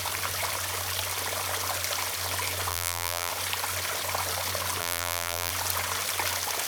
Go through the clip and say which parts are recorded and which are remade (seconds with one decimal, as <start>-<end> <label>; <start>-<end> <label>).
0.0-2.7 recorded; 2.7-3.3 remade; 3.3-4.8 recorded; 4.8-5.5 remade; 5.5-6.7 recorded